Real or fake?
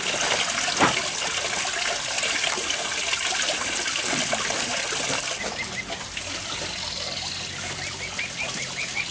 real